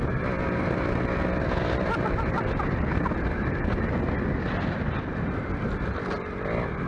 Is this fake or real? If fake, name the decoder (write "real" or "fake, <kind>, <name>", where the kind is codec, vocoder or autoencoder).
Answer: real